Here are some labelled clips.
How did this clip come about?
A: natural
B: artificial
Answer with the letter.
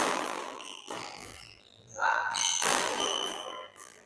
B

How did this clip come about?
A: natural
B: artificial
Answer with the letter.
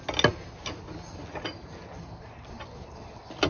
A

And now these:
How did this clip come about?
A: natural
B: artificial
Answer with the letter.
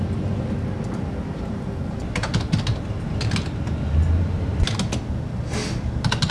A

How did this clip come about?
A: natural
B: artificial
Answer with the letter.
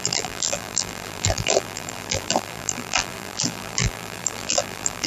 B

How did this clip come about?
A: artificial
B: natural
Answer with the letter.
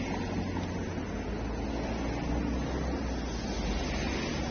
B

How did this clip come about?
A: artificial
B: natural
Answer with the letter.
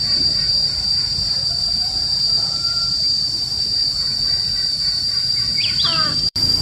A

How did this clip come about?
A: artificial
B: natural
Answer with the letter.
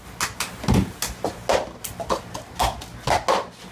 B